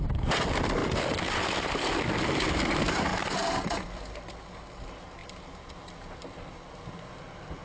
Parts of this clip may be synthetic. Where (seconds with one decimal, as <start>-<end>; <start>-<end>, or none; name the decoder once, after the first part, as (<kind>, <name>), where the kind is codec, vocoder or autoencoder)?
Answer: 0.8-2.2 (vocoder, BigVGAN v2); 3.1-4.3; 5.2-6.9